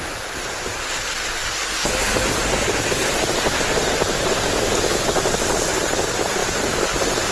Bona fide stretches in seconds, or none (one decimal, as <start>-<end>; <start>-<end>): 0.0-7.3